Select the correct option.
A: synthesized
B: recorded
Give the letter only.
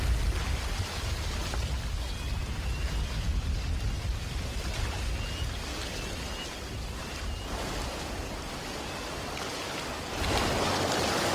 B